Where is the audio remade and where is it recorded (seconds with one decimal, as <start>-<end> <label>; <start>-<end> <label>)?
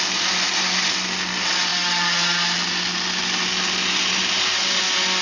0.0-5.2 recorded